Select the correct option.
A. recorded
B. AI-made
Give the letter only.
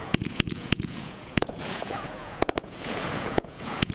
B